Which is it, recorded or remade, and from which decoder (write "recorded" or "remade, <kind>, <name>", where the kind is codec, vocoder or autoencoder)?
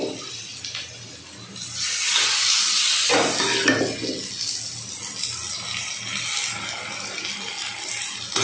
recorded